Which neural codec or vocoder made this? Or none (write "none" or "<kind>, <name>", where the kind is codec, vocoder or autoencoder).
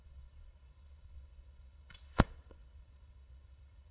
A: vocoder, Vocos